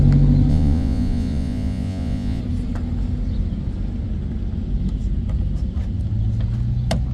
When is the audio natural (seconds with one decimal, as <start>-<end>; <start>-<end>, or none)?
0.0-0.5; 2.4-7.1